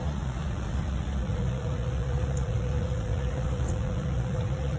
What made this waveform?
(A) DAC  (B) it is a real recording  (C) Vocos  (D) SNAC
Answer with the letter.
C